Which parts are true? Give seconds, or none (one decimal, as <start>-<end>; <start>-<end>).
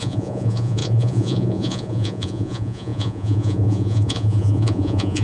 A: none